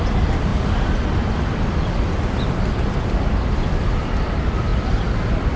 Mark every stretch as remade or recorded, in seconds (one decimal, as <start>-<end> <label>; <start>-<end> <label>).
0.0-5.6 recorded